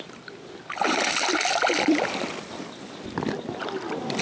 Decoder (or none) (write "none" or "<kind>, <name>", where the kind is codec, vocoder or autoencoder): none